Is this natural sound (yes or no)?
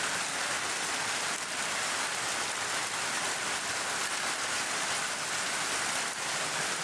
yes